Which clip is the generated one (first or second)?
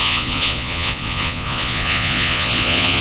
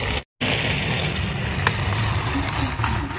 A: first